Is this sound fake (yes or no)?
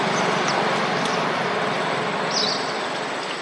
no